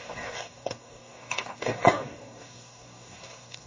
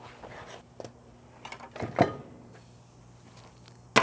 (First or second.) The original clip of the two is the second